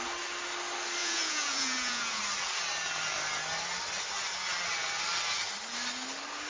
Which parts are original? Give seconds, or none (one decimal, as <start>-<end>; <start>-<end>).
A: 0.0-1.0; 2.2-6.5